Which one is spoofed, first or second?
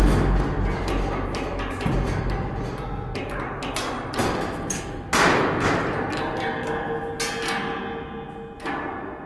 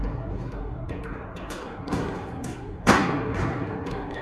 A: second